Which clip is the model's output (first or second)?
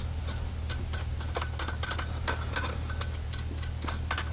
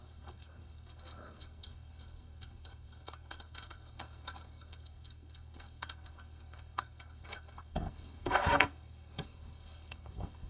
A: second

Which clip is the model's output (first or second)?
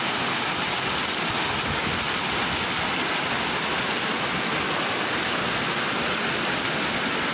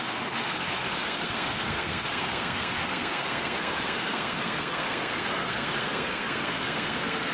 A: second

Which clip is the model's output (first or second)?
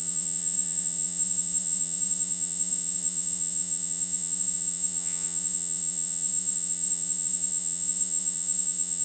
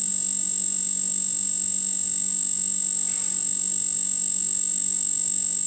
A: first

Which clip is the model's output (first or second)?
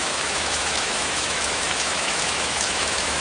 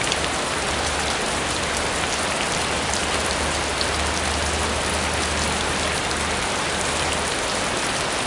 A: first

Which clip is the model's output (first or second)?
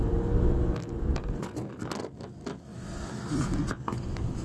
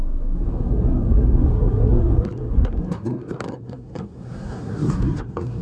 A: second